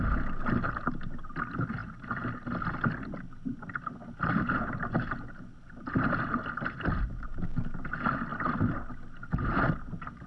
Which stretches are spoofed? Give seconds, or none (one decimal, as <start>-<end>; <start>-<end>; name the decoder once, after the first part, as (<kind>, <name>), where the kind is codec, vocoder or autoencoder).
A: none